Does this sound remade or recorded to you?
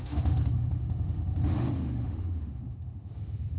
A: remade